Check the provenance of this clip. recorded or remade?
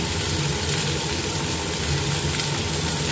recorded